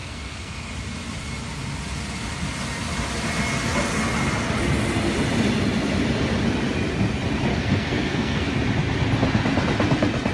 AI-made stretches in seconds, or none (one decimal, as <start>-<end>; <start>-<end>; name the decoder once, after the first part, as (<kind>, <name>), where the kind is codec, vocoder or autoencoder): 0.0-0.7 (codec, SNAC); 7.5-8.5